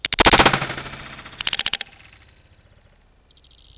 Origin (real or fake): real